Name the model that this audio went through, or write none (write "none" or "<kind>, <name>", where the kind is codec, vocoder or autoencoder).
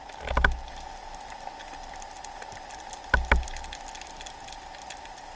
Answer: none